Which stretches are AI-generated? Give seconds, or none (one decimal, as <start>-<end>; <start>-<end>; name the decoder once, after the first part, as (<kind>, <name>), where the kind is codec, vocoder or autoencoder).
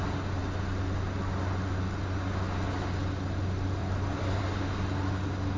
3.8-4.4 (vocoder, BigVGAN v2)